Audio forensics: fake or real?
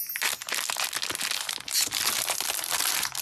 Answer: real